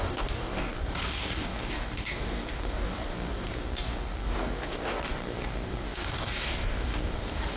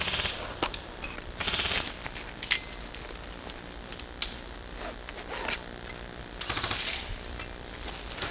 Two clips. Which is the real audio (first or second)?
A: second